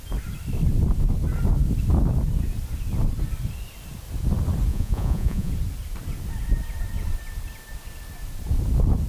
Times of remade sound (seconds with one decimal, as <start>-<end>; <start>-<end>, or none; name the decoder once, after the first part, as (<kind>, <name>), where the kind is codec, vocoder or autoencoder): 4.7-5.5 (vocoder, Vocos)